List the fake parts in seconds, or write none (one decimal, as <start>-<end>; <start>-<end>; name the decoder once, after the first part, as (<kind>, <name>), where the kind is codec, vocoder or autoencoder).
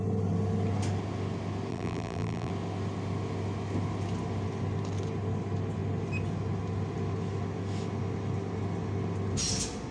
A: 1.7-2.5 (vocoder, BigVGAN v2)